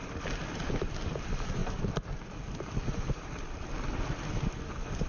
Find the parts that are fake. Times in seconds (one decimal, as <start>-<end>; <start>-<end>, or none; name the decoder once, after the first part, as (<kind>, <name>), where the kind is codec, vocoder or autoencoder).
1.6-4.3 (vocoder, BigVGAN v2)